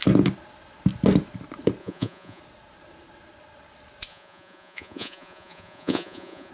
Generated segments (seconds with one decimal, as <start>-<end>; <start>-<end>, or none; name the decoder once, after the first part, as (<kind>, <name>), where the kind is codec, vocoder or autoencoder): 1.8-2.4 (vocoder, Vocos); 4.1-6.5